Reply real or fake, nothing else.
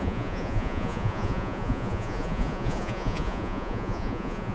fake